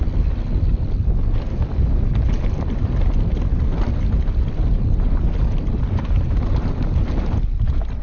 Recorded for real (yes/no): yes